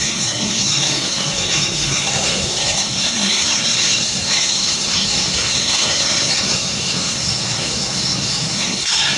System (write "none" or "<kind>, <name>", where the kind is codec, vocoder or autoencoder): codec, SNAC